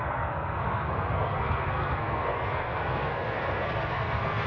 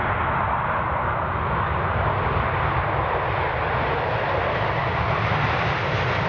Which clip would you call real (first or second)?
second